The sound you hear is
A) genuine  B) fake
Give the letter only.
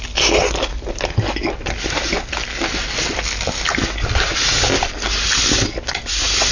A